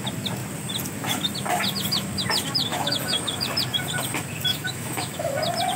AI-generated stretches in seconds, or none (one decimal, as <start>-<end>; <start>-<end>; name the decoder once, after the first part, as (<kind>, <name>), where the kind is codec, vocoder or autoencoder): 2.7-3.4 (autoencoder, DAC-VAE); 4.5-5.3